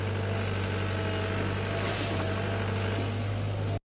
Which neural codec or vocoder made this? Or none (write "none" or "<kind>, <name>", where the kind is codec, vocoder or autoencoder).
none